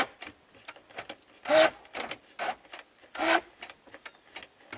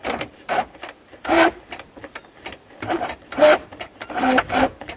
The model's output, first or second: second